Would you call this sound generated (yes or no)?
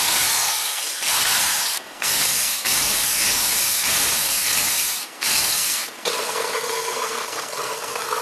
yes